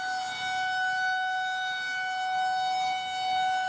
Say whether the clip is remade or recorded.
recorded